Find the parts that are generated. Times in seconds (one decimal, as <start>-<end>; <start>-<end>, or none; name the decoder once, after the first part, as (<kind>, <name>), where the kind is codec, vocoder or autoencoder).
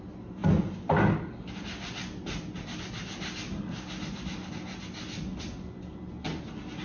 none